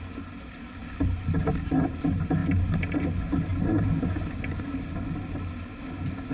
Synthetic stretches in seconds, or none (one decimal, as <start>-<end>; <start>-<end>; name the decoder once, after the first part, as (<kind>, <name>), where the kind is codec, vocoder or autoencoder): none